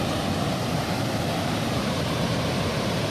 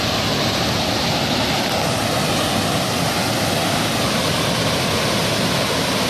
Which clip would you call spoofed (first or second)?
first